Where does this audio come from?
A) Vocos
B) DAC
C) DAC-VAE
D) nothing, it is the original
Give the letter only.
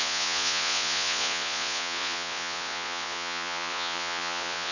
A